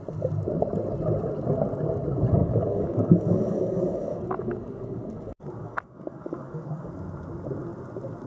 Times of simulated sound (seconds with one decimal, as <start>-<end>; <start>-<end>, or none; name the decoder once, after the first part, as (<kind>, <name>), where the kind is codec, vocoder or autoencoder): 2.4-6.9 (codec, DAC)